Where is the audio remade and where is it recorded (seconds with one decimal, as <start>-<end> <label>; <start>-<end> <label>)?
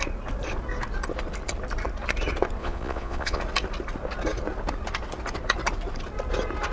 0.0-2.6 recorded; 2.6-3.4 remade; 3.4-6.7 recorded